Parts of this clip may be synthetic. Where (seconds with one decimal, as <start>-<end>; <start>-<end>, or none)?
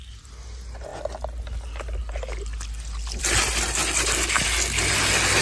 none